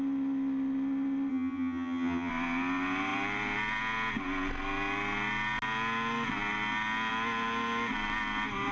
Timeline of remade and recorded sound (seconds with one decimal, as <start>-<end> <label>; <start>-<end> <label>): 0.0-1.3 recorded; 1.3-2.3 remade; 2.3-8.7 recorded